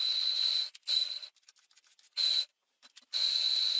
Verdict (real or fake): real